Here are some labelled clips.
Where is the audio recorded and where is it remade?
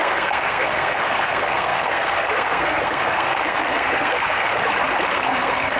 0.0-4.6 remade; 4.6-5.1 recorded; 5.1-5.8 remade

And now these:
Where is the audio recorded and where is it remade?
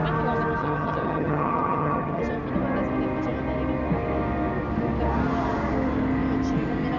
0.0-0.6 recorded; 0.6-2.2 remade; 2.2-7.0 recorded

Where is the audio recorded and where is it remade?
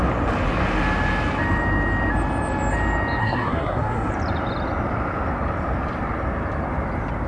0.0-3.2 recorded; 3.2-4.1 remade; 4.1-7.3 recorded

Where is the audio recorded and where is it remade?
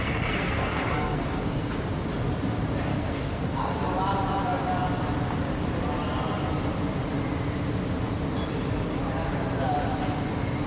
0.0-1.7 remade; 1.7-2.9 recorded; 2.9-3.8 remade; 3.8-10.7 recorded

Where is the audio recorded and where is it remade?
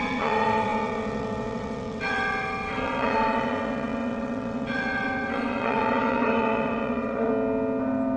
0.0-7.3 remade; 7.3-8.2 recorded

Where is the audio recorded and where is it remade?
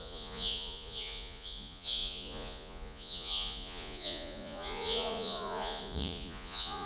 0.0-6.9 remade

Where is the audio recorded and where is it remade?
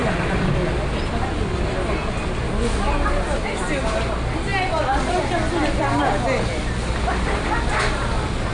0.0-0.6 remade; 0.6-8.5 recorded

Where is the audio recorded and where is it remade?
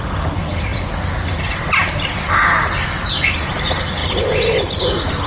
0.0-4.0 remade; 4.0-4.6 recorded; 4.6-5.3 remade